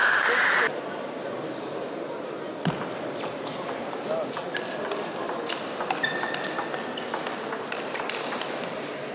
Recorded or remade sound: recorded